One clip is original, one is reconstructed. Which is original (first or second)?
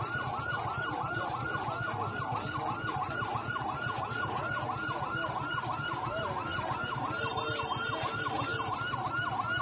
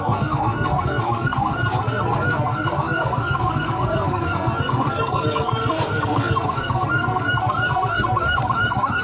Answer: first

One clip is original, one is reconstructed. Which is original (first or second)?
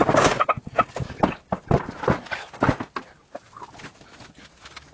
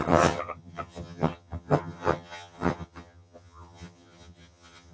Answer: first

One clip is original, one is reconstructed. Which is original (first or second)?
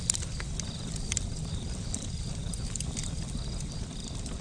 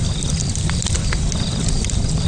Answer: first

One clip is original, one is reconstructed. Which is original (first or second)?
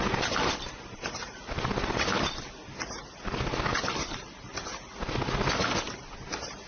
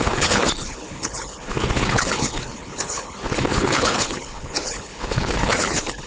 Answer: first